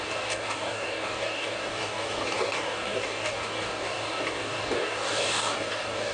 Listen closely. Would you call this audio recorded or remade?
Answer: remade